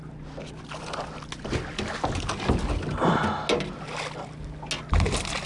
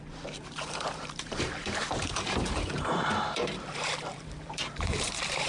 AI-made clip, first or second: second